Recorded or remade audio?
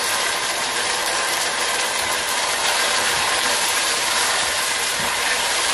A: remade